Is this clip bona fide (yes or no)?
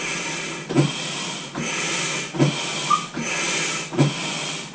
yes